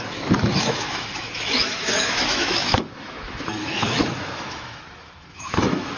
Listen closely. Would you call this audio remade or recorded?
remade